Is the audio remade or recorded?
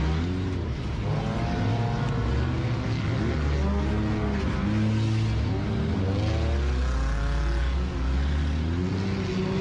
recorded